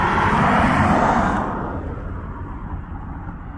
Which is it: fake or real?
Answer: real